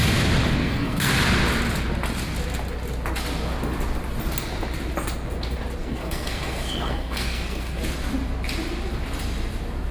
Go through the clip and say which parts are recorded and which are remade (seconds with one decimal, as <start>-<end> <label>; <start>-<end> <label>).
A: 0.0-0.6 recorded; 0.6-1.1 remade; 1.1-5.8 recorded; 5.8-7.8 remade; 7.8-9.9 recorded